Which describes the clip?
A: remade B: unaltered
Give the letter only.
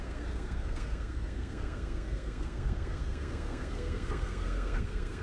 A